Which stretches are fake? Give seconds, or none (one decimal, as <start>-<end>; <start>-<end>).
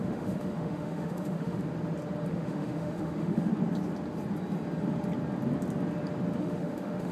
0.0-1.6; 2.3-3.5; 6.4-7.1